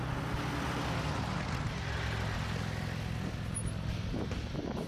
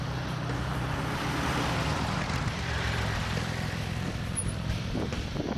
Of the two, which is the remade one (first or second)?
second